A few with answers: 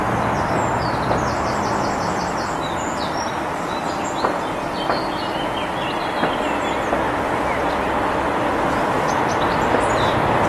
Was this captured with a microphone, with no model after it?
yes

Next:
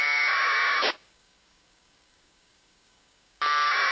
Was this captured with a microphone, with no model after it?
no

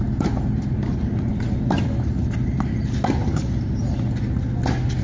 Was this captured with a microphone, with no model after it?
yes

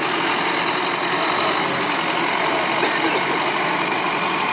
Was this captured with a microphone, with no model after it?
yes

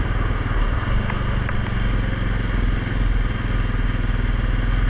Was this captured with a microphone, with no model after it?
yes